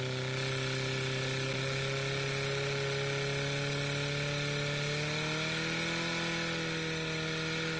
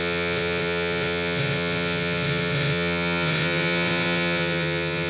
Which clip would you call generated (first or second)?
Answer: second